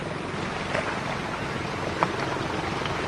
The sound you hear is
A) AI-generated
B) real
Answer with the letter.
B